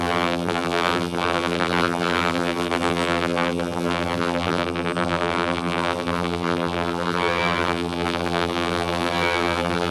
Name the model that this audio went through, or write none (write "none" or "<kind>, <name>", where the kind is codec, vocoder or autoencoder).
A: vocoder, BigVGAN v2